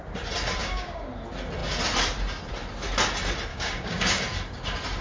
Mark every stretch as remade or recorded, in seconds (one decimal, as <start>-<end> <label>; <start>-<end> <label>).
0.0-0.6 recorded; 0.6-1.1 remade; 1.1-3.5 recorded; 3.5-4.2 remade; 4.2-5.0 recorded